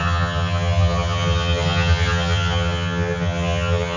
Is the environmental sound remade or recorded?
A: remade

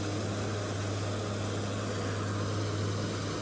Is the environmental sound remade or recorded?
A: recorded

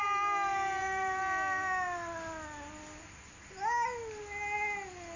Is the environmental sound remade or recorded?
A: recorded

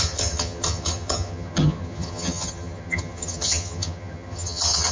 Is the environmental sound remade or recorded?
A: remade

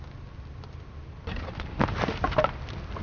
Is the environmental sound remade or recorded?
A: recorded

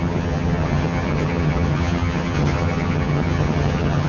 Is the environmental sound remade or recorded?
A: remade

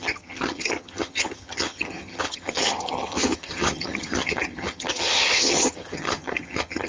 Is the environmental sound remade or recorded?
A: remade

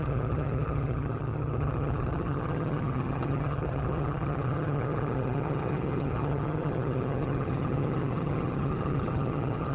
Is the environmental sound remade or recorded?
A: remade